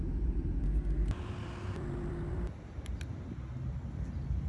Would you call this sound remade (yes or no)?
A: no